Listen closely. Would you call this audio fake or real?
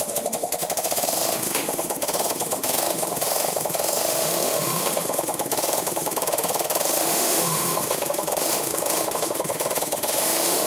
fake